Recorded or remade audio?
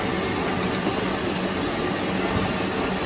recorded